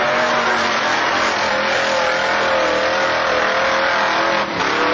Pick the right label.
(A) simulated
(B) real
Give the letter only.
B